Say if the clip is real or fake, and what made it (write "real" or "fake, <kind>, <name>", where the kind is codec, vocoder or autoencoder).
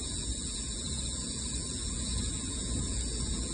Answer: fake, vocoder, Vocos